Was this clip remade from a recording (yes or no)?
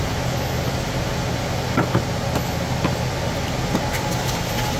no